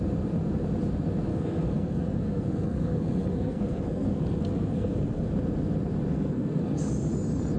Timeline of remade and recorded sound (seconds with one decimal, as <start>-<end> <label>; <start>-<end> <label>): 0.0-1.3 recorded; 1.3-5.3 remade; 5.3-6.1 recorded; 6.1-6.9 remade; 6.9-7.6 recorded